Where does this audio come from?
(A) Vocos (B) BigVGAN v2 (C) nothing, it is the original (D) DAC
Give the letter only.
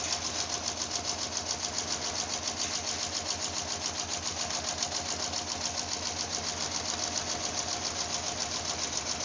C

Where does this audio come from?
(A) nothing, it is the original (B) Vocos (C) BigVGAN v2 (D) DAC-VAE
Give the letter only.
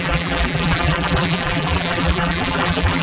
C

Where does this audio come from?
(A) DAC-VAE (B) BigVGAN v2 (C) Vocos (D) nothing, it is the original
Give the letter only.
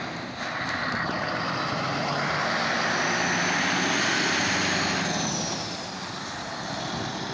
D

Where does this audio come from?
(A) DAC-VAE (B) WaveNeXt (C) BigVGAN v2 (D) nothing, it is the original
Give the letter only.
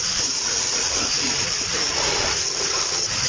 C